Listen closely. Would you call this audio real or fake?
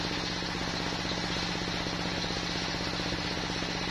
real